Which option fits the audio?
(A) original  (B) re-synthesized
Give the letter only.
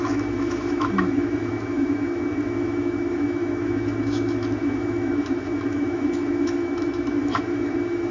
B